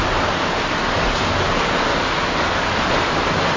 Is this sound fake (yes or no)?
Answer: no